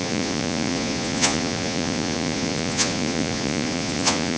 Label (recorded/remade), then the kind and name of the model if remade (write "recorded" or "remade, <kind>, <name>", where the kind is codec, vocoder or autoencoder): remade, vocoder, Vocos